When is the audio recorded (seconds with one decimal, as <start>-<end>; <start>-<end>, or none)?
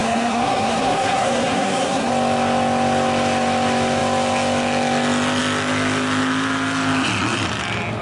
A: 2.1-8.0